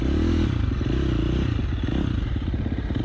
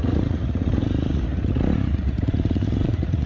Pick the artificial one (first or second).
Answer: second